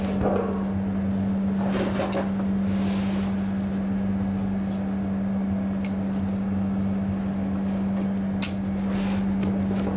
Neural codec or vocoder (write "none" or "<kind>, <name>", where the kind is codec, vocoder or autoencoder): none